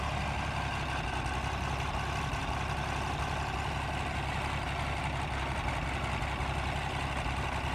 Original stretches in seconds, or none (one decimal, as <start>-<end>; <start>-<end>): 0.0-7.7